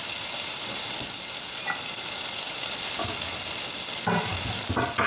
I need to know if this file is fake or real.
real